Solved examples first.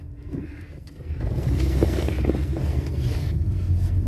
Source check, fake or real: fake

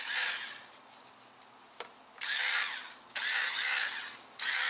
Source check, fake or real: real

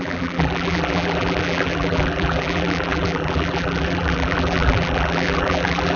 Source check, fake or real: fake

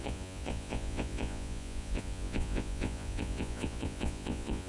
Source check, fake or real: fake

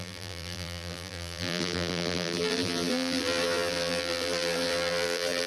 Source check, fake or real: fake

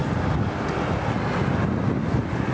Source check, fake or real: real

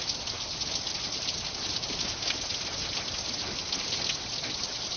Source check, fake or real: real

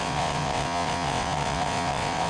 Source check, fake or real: fake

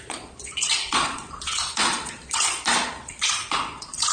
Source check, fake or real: fake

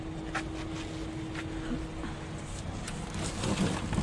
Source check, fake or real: real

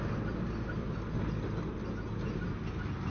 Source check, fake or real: real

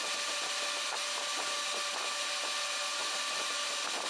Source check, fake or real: real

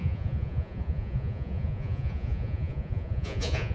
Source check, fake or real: fake